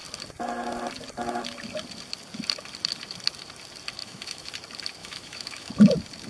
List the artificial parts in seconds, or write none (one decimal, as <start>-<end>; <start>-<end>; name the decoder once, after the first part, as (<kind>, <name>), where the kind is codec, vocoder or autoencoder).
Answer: 4.0-4.5 (autoencoder, DAC-VAE); 5.0-5.7